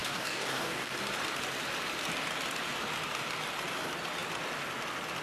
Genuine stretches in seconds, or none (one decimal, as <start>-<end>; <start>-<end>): 0.9-5.2